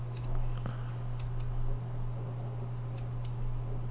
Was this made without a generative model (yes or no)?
yes